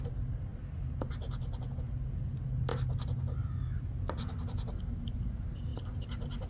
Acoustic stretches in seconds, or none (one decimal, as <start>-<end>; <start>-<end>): 0.0-6.5